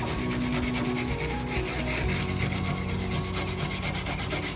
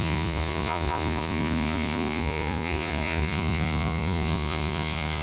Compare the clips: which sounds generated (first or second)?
second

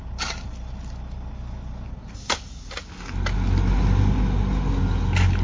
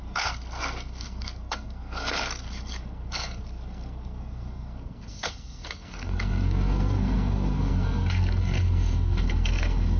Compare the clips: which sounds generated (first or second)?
second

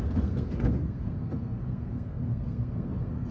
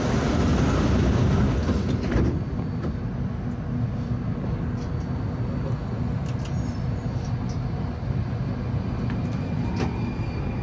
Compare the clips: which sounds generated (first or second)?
first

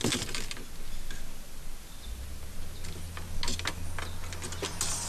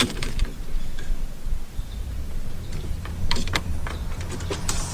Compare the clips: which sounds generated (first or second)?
second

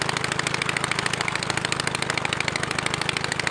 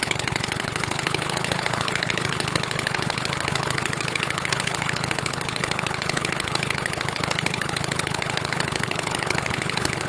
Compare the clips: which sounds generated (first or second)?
second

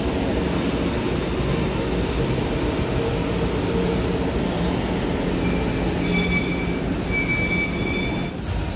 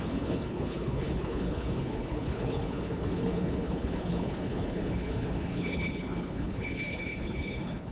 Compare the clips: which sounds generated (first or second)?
second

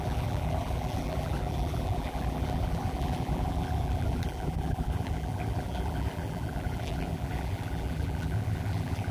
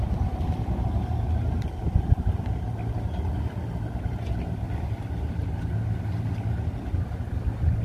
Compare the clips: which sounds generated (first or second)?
first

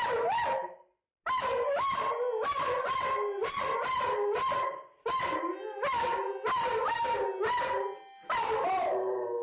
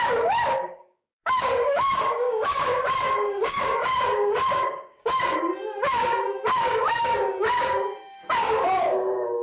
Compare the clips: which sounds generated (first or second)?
second